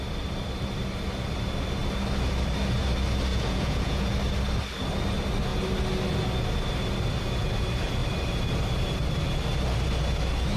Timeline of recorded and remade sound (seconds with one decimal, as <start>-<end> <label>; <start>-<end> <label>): 0.0-3.3 recorded; 3.3-4.1 remade; 4.1-10.6 recorded